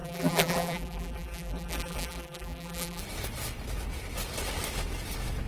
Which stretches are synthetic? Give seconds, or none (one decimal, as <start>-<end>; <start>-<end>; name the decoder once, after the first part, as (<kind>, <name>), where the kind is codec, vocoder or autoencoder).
0.0-3.0 (vocoder, BigVGAN v2)